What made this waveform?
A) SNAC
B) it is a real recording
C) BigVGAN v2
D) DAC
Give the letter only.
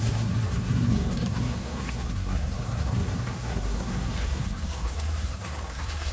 A